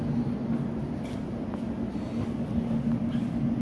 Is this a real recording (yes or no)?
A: yes